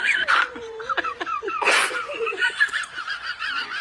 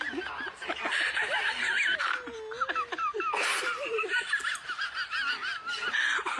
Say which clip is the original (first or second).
second